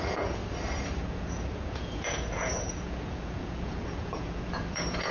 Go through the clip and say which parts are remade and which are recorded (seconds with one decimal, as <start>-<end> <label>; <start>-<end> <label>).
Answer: 0.0-0.4 remade; 0.4-1.1 recorded; 1.1-5.1 remade